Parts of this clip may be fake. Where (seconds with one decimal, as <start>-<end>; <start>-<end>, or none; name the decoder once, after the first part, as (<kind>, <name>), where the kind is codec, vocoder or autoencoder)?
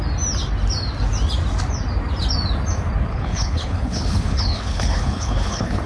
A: 3.1-5.9 (codec, HILCodec)